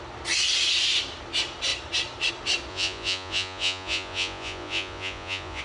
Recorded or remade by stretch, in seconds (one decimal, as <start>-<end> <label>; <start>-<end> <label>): 0.0-2.7 recorded; 2.7-5.6 remade